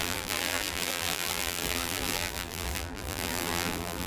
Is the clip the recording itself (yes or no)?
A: no